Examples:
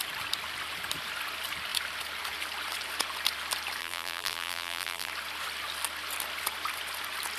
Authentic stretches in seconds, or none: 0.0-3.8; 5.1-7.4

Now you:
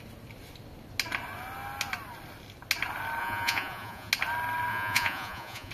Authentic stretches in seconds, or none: 0.0-3.2; 4.1-4.7